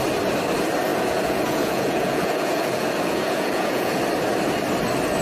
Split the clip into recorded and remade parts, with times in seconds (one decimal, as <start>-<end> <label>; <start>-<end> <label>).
0.0-0.9 recorded; 0.9-4.0 remade; 4.0-5.2 recorded